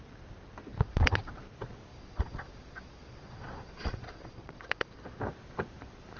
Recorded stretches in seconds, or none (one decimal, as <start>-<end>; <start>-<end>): 0.0-0.7; 1.3-1.9; 5.2-6.2